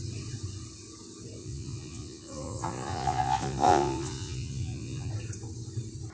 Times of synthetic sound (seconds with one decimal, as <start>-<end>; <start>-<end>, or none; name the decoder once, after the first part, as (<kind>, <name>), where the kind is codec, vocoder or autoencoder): 1.4-5.1 (vocoder, Vocos)